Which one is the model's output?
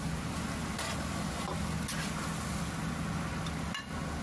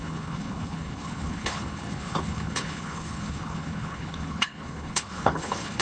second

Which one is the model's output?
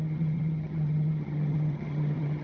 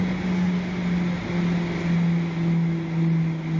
first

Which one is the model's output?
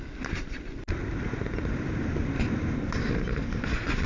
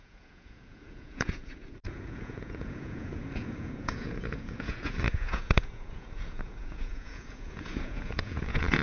second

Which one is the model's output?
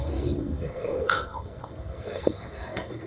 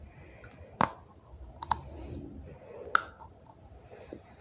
first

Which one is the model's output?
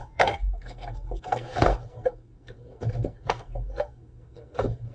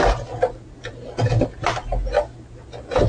first